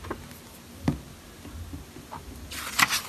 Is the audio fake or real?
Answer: real